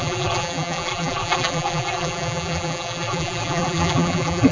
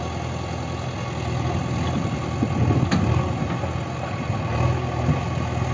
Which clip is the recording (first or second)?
second